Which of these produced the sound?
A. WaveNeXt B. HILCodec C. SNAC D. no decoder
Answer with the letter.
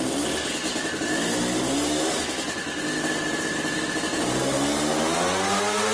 D